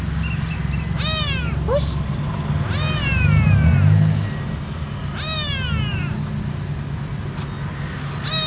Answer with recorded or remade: recorded